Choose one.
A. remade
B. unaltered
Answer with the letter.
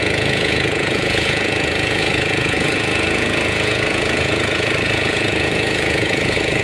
A